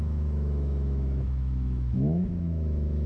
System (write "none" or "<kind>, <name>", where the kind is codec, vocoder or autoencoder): autoencoder, DAC-VAE